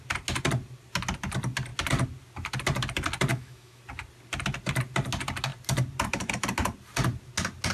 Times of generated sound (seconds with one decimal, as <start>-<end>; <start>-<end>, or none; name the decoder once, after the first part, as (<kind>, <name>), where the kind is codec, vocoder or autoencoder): 3.3-3.8 (autoencoder, DAC-VAE)